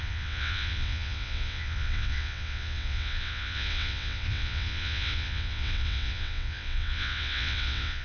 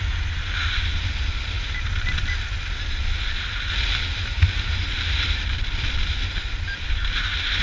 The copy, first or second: first